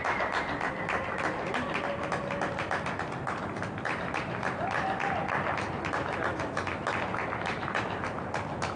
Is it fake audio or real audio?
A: real